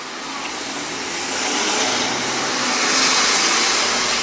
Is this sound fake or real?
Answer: real